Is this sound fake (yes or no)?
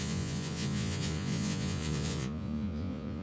yes